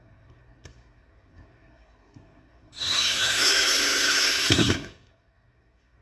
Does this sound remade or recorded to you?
remade